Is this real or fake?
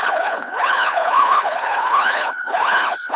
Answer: fake